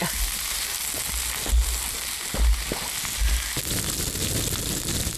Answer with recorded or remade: recorded